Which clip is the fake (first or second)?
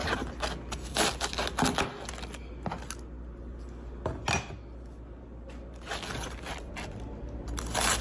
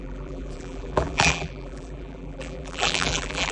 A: second